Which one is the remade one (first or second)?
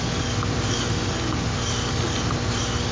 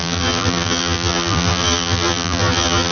second